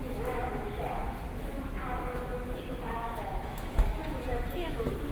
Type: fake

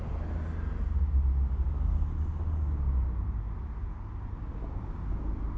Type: real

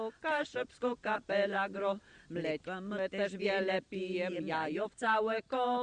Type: real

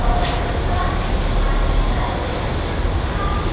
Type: real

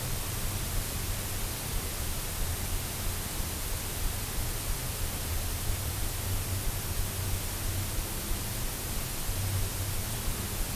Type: real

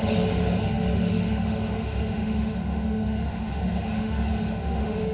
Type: fake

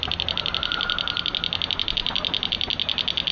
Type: real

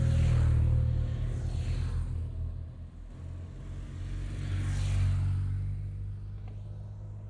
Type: real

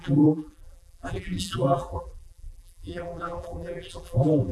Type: fake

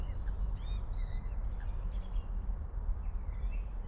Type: real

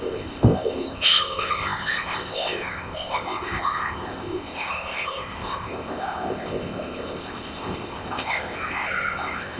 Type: fake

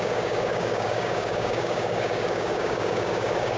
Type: fake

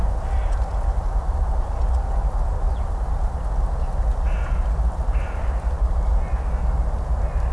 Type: real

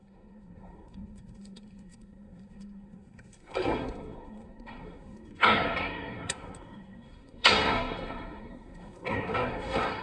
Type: fake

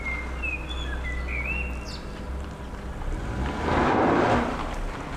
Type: real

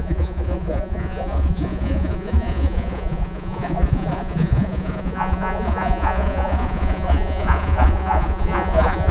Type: fake